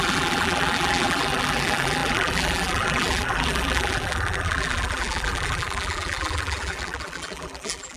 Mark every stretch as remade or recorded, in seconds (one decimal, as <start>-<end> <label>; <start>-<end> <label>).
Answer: 0.0-8.0 remade